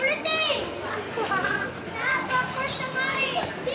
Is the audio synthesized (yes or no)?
no